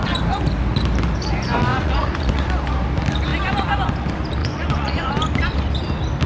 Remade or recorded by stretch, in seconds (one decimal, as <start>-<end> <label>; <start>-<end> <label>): 0.0-1.7 recorded; 1.7-2.5 remade; 2.5-4.4 recorded; 4.4-5.1 remade; 5.1-6.3 recorded

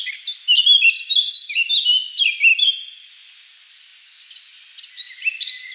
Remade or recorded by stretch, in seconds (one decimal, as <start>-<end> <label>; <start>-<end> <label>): 0.0-5.7 recorded